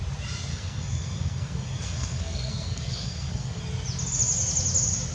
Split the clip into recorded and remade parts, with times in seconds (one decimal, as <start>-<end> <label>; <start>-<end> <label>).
0.0-0.5 recorded; 0.5-3.6 remade; 3.6-5.1 recorded